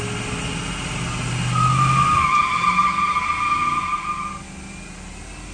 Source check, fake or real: real